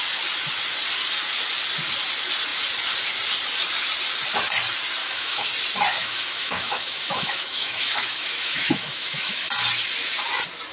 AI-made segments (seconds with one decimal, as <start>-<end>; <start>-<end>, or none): 5.0-5.5; 6.0-9.5